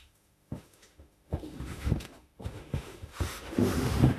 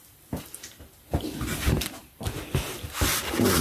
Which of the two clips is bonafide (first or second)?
second